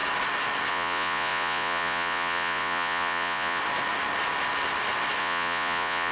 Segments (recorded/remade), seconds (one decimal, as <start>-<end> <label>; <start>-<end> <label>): 0.0-0.7 recorded; 0.7-3.6 remade; 3.6-5.2 recorded; 5.2-6.1 remade